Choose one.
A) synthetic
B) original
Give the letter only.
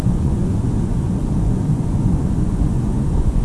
A